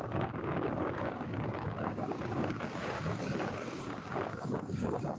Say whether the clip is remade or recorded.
remade